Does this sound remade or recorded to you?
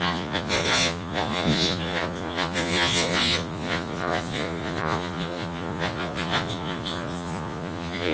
remade